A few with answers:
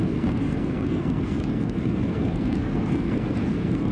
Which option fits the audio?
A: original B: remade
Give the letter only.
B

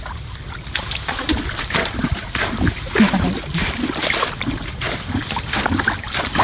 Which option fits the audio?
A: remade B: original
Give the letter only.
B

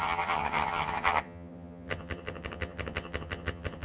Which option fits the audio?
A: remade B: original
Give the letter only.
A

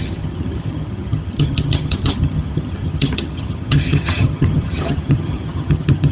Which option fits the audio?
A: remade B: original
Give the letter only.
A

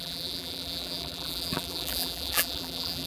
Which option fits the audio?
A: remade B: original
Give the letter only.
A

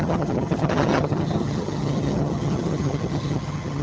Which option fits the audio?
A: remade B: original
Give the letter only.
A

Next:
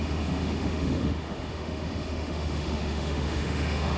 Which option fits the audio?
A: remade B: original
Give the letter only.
A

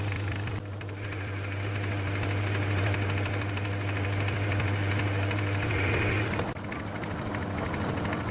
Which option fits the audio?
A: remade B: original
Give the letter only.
B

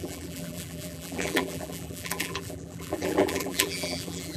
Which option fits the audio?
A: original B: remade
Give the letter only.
B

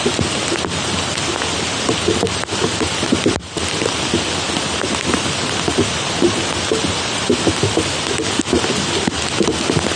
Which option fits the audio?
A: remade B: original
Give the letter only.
B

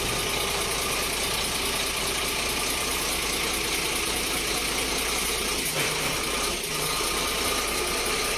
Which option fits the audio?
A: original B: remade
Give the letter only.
A